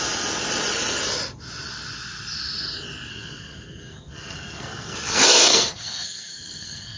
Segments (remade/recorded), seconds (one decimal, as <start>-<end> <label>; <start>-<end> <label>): 0.0-3.1 recorded; 3.1-7.0 remade